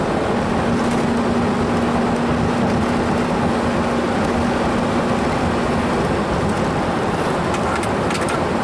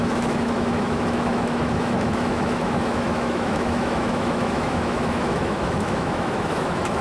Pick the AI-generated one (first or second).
second